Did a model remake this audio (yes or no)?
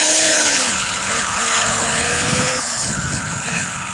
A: yes